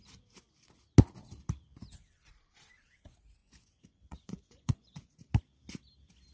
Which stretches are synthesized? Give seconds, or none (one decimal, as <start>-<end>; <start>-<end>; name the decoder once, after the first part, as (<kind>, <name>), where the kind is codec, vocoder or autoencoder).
3.4-5.3 (vocoder, Vocos)